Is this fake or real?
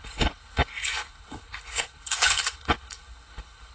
fake